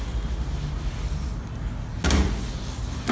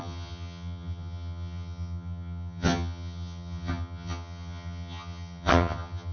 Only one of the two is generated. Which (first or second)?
second